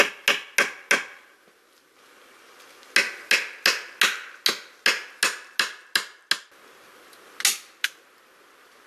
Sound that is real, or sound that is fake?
real